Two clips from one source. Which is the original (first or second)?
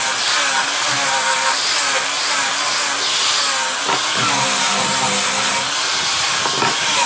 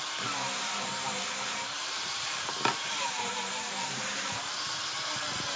first